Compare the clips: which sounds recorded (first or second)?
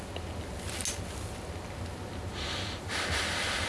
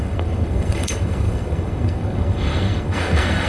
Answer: first